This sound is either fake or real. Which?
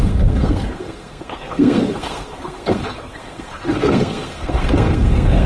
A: fake